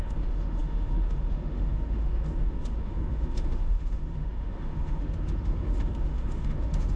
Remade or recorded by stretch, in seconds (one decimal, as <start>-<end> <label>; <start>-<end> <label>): 0.0-7.0 remade